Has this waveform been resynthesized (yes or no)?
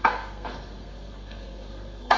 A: yes